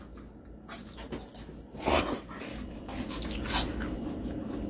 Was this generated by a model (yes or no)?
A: no